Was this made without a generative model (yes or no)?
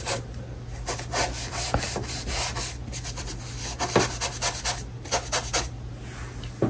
yes